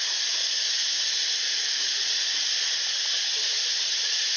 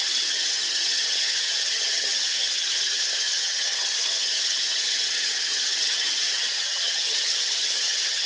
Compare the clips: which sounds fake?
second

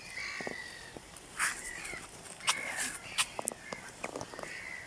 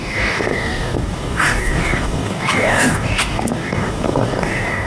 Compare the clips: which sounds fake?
second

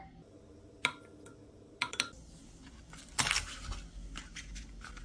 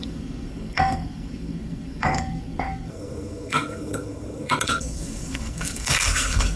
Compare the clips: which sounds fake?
second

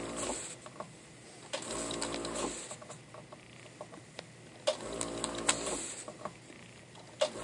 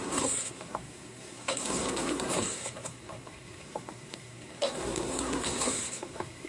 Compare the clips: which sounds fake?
second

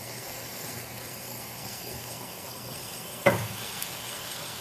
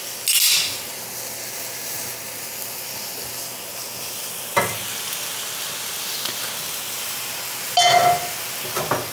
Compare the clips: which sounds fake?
first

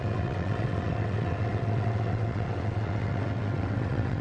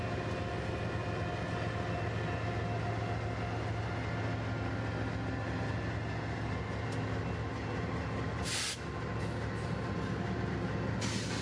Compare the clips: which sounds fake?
first